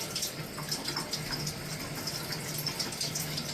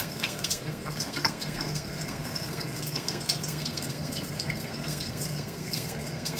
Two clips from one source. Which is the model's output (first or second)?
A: second